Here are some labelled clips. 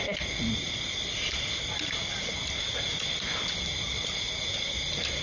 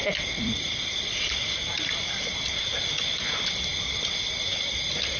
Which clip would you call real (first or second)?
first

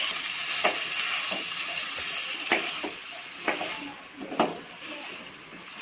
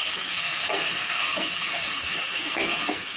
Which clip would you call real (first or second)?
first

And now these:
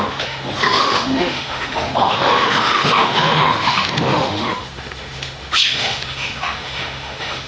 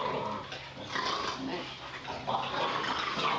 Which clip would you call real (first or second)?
second